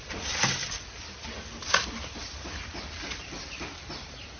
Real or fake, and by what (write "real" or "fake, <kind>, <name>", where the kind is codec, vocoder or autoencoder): fake, vocoder, BigVGAN v2